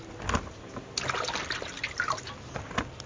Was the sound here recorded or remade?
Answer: recorded